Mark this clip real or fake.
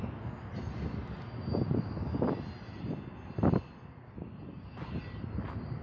real